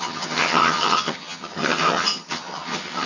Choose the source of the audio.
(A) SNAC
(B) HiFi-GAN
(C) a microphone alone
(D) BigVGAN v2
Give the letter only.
B